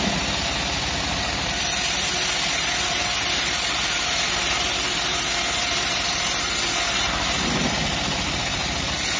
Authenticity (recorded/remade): recorded